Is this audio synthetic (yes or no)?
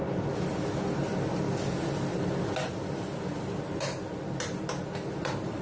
no